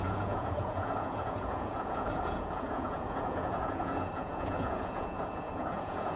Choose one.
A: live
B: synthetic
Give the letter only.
B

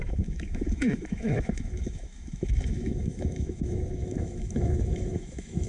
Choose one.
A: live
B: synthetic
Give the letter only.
B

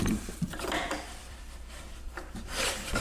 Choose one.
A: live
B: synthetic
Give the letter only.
B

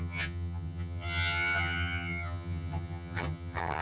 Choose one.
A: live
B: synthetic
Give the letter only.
B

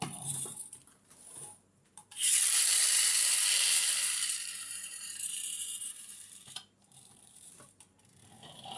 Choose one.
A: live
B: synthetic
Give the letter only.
B